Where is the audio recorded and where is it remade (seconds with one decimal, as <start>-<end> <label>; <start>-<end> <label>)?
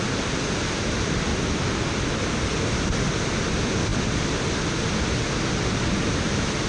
0.0-1.3 remade; 1.3-2.2 recorded; 2.2-6.7 remade